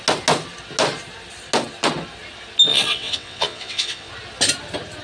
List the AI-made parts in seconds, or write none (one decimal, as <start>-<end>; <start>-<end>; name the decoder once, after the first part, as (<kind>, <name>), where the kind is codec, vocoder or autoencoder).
2.7-4.1 (vocoder, WaveNeXt)